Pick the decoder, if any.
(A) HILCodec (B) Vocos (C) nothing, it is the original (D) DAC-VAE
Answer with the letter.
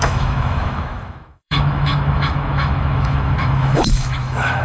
D